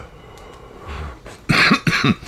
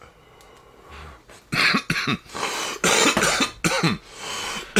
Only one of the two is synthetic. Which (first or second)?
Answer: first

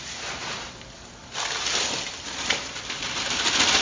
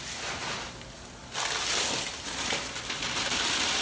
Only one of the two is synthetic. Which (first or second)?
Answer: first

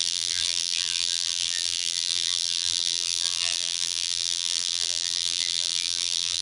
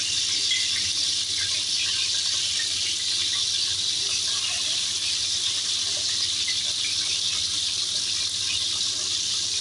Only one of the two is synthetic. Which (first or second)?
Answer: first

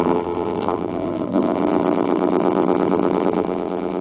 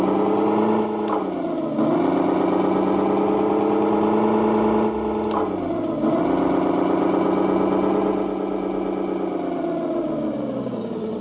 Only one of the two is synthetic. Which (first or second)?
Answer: first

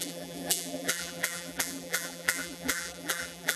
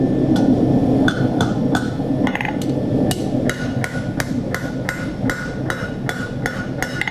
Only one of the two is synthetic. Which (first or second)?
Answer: first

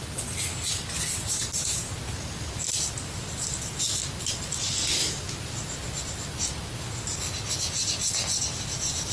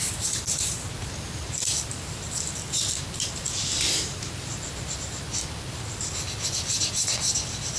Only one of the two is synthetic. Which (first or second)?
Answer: second